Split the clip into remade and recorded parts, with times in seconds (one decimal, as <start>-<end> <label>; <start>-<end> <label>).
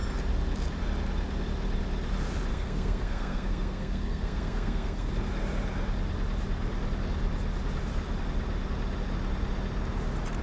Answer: 0.0-2.5 recorded; 2.5-5.1 remade; 5.1-10.4 recorded